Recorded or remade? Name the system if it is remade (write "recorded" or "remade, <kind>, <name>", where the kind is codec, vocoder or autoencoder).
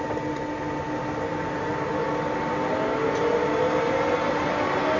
recorded